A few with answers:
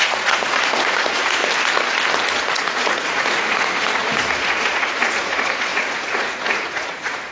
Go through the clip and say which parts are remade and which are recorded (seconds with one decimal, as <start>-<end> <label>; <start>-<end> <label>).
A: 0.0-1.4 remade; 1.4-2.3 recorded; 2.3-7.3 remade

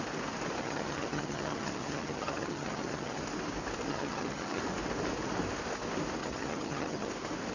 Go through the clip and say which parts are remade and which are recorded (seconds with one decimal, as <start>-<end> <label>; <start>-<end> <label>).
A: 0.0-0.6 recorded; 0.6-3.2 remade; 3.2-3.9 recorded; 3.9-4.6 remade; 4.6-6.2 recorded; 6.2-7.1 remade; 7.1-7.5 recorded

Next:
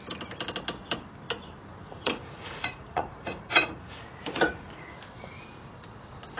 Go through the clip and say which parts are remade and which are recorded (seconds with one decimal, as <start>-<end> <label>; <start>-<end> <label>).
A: 0.0-1.8 recorded; 1.8-5.0 remade; 5.0-6.4 recorded

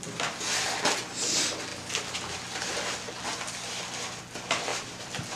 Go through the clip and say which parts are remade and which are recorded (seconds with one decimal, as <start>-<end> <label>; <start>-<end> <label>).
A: 0.0-4.7 recorded; 4.7-5.4 remade

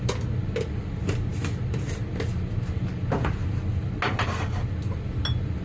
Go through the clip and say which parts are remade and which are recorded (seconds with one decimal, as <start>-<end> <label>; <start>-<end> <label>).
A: 0.0-5.6 recorded

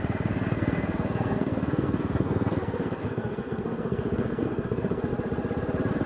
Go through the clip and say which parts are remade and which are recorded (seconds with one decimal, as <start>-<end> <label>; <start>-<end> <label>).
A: 0.0-5.1 remade; 5.1-6.1 recorded